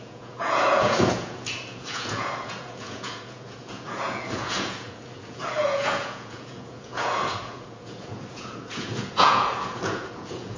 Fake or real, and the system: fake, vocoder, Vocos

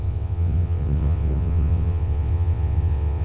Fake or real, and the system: fake, vocoder, WaveNeXt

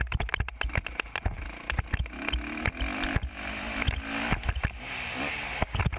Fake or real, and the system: real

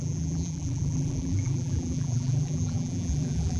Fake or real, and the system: fake, vocoder, BigVGAN v2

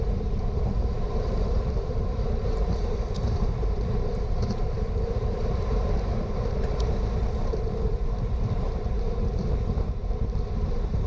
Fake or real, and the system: fake, vocoder, BigVGAN v2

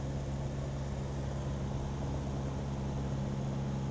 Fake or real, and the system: real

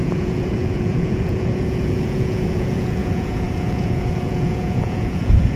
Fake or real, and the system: fake, vocoder, Vocos